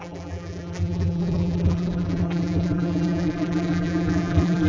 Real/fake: fake